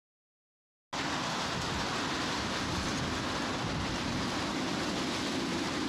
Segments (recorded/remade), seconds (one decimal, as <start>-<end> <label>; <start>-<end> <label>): 0.0-5.9 recorded